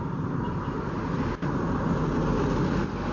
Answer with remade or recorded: recorded